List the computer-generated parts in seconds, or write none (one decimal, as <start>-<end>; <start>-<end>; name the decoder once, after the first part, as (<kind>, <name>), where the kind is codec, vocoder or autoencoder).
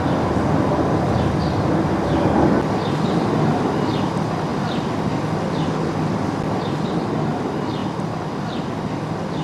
none